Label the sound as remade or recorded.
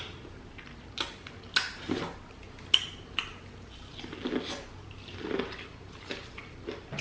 recorded